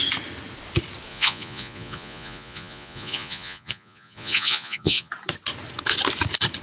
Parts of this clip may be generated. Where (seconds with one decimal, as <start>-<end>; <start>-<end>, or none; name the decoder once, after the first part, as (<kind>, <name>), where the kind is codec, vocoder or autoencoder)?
1.1-5.1 (vocoder, Vocos)